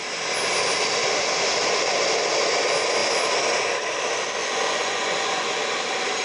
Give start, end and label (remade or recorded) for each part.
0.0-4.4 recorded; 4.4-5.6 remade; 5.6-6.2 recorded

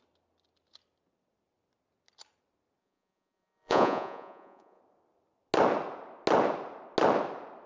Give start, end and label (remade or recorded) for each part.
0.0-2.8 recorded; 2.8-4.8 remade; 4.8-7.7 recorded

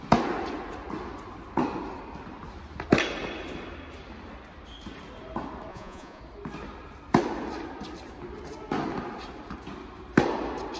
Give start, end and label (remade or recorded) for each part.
0.0-5.7 recorded; 5.7-6.2 remade; 6.2-10.8 recorded

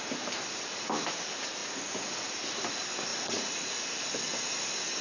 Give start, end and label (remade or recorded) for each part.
0.0-1.6 recorded; 1.6-2.2 remade; 2.2-3.1 recorded; 3.1-3.7 remade; 3.7-5.0 recorded

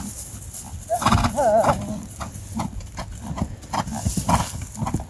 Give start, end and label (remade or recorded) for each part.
0.0-5.1 recorded

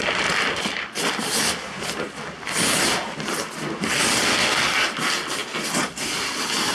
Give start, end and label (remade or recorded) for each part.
0.0-6.7 recorded

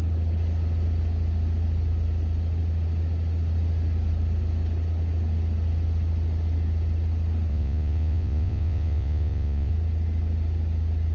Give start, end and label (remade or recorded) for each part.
0.0-7.5 recorded; 7.5-9.7 remade; 9.7-11.1 recorded

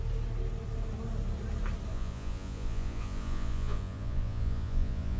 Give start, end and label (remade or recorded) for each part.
0.0-1.9 recorded; 1.9-5.2 remade